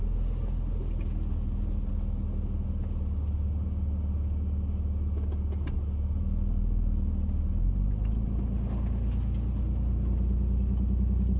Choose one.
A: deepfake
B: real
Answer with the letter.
B